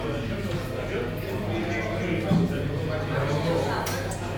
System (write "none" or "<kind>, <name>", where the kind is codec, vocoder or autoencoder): none